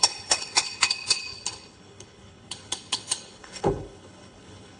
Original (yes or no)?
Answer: no